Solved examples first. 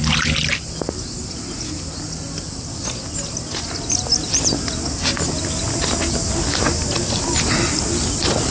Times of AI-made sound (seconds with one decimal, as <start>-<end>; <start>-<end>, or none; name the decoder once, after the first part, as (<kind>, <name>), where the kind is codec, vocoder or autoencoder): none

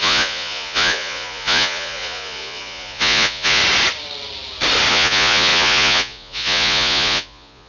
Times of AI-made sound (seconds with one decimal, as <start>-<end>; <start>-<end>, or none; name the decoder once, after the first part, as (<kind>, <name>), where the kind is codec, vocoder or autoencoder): 0.0-3.6 (vocoder, Vocos); 4.9-7.7

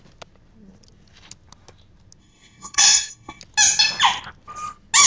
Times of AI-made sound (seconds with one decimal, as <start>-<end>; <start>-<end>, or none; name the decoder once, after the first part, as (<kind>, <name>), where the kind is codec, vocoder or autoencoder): 2.2-3.4 (codec, SNAC)